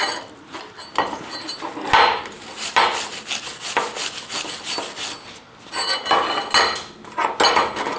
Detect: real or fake real